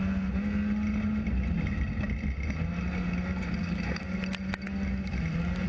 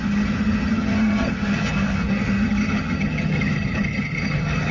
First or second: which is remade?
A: second